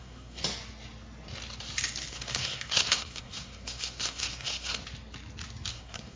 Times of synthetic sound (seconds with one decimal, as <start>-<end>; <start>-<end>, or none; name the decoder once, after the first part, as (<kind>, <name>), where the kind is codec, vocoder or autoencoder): 0.0-0.4 (codec, SNAC); 2.1-4.8; 5.7-6.2